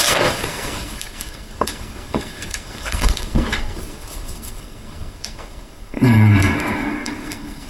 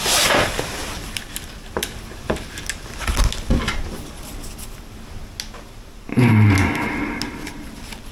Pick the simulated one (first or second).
first